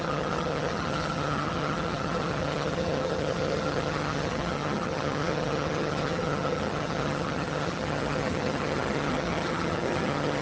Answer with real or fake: fake